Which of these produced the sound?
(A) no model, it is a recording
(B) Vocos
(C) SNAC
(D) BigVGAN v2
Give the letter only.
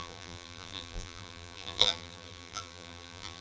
D